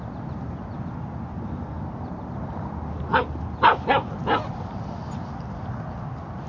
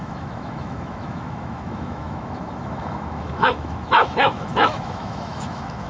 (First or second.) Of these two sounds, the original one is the first